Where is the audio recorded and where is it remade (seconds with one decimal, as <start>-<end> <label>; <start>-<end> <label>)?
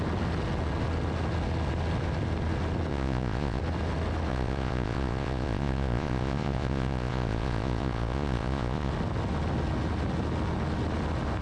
0.0-2.9 recorded; 2.9-3.6 remade; 3.6-4.3 recorded; 4.3-8.9 remade; 8.9-11.4 recorded